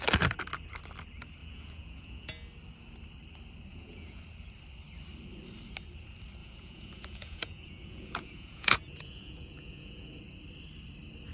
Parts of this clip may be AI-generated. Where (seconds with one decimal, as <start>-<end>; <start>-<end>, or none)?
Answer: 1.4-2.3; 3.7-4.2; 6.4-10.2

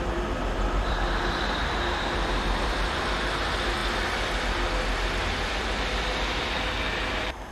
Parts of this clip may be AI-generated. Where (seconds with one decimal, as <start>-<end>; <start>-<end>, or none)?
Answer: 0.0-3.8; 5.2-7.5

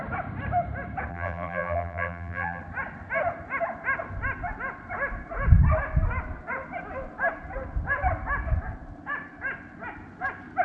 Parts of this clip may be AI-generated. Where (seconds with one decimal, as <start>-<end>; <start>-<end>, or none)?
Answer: 1.1-2.6

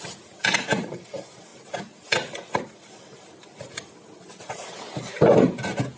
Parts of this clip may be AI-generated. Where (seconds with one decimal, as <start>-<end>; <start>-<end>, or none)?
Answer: none

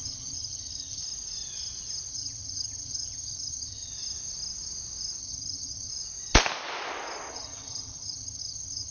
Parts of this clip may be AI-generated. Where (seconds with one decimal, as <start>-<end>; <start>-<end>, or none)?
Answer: 0.0-1.0; 2.1-3.9; 5.2-5.9; 7.3-8.9

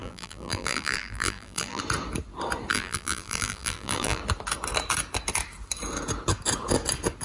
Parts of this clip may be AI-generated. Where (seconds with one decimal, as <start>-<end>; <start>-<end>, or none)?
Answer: 0.0-1.8; 2.7-4.2